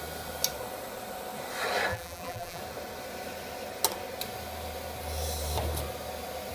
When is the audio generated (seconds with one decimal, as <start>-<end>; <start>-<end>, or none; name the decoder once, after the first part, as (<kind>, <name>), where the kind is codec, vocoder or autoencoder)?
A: 1.9-2.6 (vocoder, BigVGAN v2)